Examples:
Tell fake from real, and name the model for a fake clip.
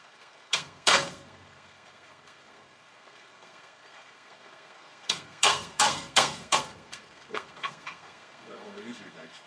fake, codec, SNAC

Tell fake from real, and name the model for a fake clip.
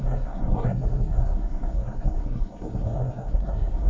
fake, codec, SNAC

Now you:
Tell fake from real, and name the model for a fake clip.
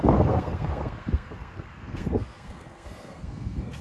fake, codec, SNAC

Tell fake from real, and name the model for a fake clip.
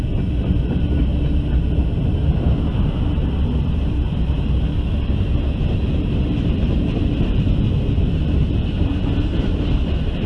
real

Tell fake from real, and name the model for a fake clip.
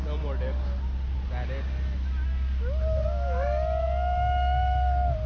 real